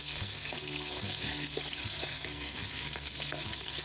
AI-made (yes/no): yes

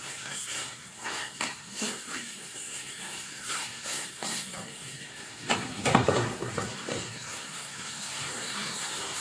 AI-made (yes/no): yes